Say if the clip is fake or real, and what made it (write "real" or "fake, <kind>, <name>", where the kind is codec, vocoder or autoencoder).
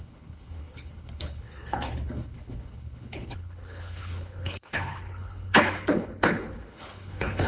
fake, codec, HILCodec